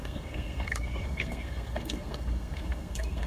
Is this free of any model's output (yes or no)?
no